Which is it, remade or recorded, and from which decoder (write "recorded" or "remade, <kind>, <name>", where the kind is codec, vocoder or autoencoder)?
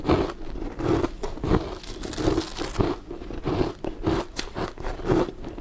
recorded